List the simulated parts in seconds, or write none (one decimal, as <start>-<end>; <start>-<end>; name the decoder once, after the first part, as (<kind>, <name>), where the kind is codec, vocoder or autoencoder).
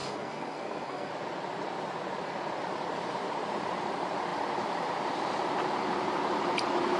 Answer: 0.0-1.1 (codec, SNAC)